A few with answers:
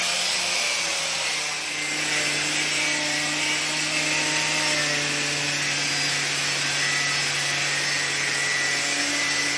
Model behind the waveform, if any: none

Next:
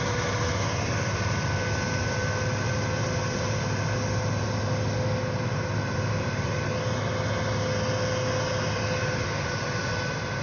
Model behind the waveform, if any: none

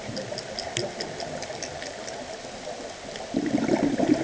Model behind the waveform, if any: none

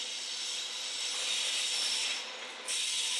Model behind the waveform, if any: none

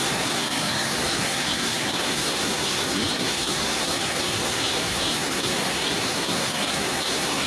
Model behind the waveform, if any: codec, SNAC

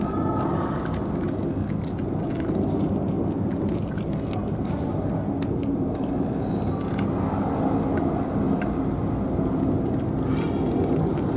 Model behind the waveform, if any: none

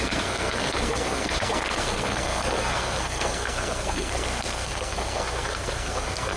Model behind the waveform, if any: codec, SNAC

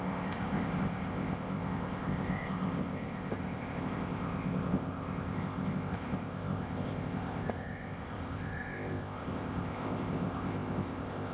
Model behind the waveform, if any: codec, ZipCodec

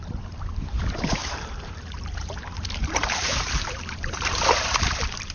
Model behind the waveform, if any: vocoder, BigVGAN v2